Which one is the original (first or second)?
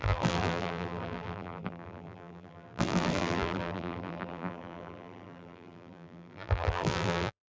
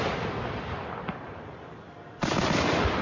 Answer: second